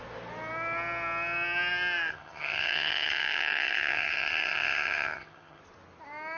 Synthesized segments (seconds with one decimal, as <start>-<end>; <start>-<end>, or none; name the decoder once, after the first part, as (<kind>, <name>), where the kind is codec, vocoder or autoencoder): 2.1-5.6 (vocoder, HiFi-GAN)

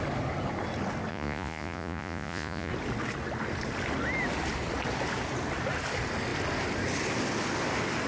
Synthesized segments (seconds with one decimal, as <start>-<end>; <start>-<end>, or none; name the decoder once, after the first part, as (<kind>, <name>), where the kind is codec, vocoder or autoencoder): 1.1-2.7 (vocoder, Vocos)